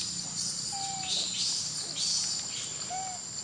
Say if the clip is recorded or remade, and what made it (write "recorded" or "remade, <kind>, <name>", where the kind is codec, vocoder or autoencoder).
recorded